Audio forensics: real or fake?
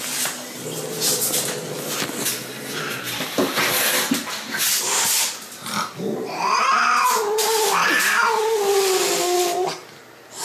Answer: real